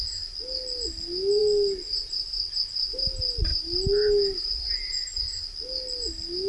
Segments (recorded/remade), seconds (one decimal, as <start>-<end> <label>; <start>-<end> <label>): 0.0-6.5 recorded